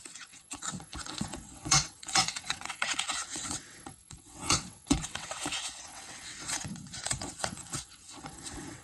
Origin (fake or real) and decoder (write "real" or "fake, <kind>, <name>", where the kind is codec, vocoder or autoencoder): fake, vocoder, WaveNeXt